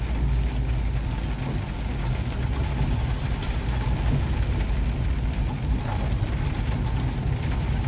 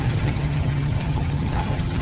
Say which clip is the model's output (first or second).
second